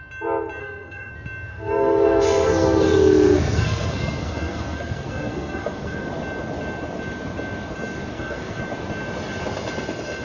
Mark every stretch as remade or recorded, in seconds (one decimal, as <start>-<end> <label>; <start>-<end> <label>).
0.0-0.6 recorded; 0.6-1.1 remade; 1.1-1.5 recorded; 1.5-6.1 remade; 6.1-8.1 recorded; 8.1-8.6 remade; 8.6-10.2 recorded